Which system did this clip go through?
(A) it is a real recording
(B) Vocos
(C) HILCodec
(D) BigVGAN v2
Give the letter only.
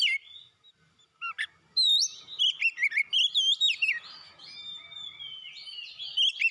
A